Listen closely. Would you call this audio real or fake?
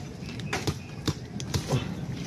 real